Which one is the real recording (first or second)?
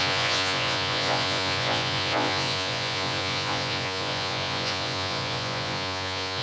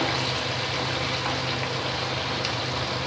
second